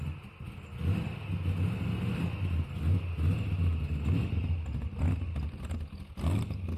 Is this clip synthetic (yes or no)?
no